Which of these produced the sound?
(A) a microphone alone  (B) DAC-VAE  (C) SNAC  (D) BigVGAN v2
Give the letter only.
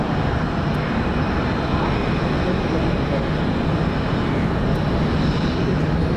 A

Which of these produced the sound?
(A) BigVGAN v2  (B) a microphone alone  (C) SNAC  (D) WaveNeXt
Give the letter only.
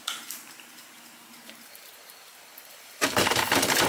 A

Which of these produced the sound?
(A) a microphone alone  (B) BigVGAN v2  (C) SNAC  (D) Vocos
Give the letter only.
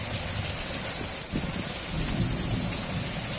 A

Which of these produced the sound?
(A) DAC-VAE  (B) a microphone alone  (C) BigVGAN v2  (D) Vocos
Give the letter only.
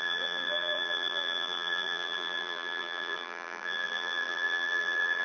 C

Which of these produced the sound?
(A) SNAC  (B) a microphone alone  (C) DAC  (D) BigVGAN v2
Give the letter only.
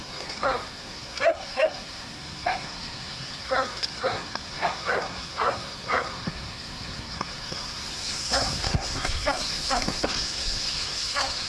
A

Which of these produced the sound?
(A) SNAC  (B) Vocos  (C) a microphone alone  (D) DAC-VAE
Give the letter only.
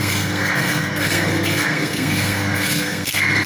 A